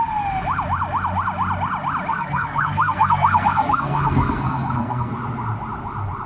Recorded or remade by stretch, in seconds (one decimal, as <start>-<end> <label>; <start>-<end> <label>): 0.0-2.1 recorded; 2.1-5.1 remade; 5.1-6.3 recorded